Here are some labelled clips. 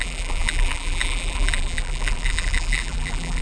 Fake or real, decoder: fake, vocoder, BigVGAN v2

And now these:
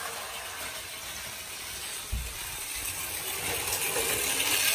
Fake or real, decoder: real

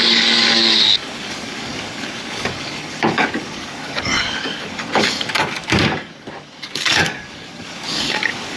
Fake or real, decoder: fake, codec, DAC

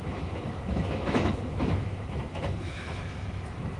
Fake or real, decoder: fake, autoencoder, DAC-VAE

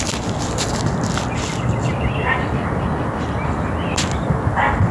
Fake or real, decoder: real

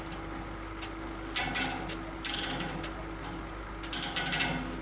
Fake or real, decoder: real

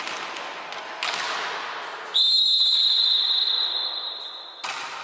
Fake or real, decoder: real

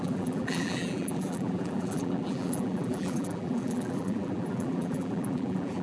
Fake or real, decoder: fake, vocoder, BigVGAN v2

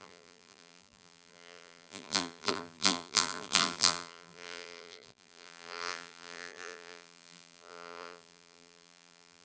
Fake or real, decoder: fake, vocoder, BigVGAN v2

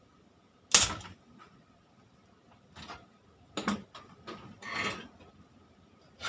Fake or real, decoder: real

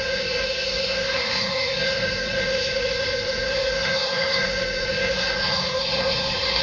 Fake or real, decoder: fake, codec, SNAC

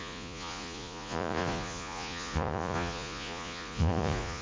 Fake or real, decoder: fake, vocoder, Vocos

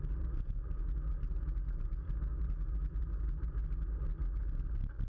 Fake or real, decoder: real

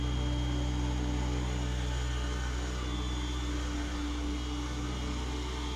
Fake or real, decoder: real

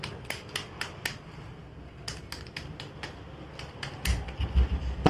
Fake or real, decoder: real